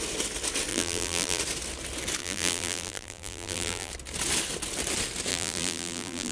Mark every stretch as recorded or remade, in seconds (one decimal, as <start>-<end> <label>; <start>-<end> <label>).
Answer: 0.0-0.7 recorded; 0.7-1.4 remade; 1.4-2.2 recorded; 2.2-3.9 remade; 3.9-5.3 recorded; 5.3-6.3 remade

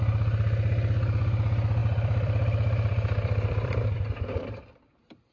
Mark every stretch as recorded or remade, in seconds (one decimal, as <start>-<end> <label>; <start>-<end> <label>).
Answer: 0.0-1.8 recorded; 1.8-5.3 remade

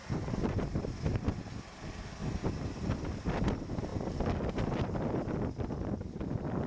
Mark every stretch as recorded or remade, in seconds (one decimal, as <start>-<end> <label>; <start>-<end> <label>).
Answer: 0.0-0.8 remade; 0.8-2.2 recorded; 2.2-2.8 remade; 2.8-6.7 recorded

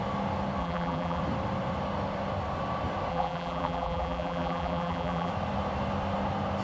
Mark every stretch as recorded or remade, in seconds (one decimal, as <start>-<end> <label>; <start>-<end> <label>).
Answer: 0.0-0.6 recorded; 0.6-1.2 remade; 1.2-3.1 recorded; 3.1-5.3 remade; 5.3-6.6 recorded

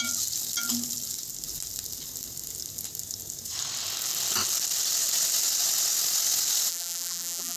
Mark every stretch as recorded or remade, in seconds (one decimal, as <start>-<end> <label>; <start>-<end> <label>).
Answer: 0.0-6.7 recorded; 6.7-7.6 remade